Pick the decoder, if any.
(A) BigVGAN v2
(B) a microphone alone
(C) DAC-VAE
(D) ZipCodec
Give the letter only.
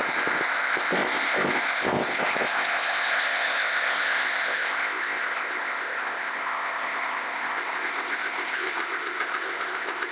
D